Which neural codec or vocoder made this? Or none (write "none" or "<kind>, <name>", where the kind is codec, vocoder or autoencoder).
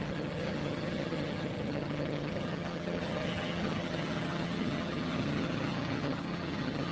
vocoder, HiFi-GAN